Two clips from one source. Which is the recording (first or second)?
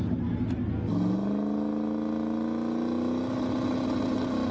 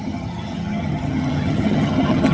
first